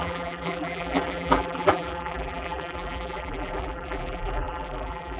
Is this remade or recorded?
remade